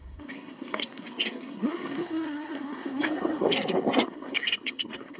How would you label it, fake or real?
fake